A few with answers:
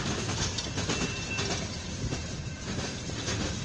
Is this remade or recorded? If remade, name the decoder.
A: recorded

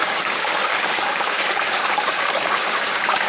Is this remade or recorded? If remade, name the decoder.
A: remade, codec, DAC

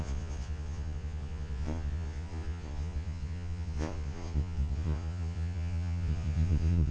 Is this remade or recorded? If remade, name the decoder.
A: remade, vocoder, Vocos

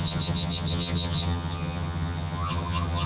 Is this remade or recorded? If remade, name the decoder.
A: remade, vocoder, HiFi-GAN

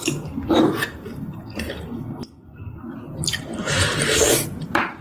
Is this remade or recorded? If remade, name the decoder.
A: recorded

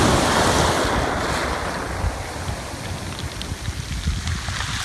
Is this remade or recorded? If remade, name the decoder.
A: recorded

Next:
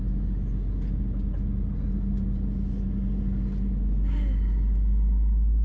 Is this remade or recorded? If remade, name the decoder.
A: recorded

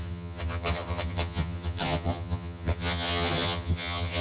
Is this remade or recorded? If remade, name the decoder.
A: remade, vocoder, HiFi-GAN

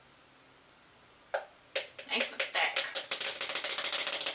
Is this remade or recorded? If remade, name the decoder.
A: recorded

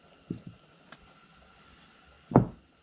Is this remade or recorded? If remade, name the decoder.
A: recorded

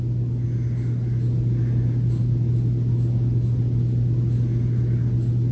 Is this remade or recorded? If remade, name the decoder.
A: recorded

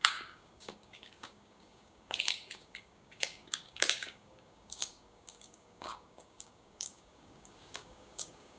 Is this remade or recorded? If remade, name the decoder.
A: remade, codec, DAC